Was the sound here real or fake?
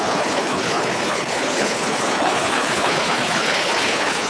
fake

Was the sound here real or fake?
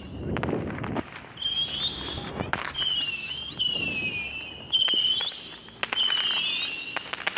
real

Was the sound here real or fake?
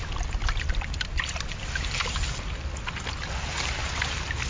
real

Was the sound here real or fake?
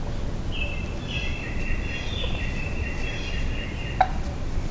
real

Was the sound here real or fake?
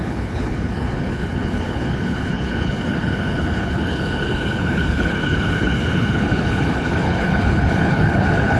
fake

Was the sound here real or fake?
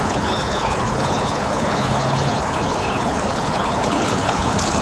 fake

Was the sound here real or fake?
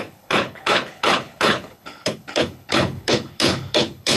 fake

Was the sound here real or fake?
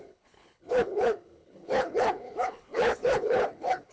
fake